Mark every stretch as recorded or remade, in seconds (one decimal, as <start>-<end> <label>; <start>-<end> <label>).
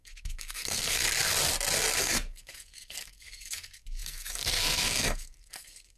0.0-1.0 remade; 1.0-2.0 recorded; 2.0-6.0 remade